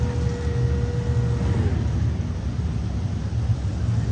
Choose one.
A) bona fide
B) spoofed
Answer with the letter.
A